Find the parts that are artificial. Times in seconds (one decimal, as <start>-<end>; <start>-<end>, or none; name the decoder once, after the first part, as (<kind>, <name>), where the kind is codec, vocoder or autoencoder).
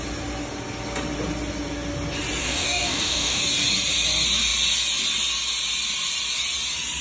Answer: 2.4-3.4 (codec, DAC)